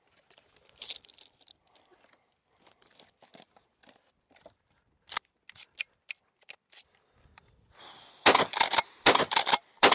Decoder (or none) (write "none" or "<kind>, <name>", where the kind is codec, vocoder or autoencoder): vocoder, BigVGAN v2